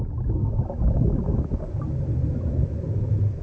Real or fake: real